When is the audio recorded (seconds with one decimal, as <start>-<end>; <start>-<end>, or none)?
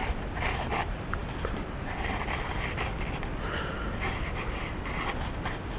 0.0-5.8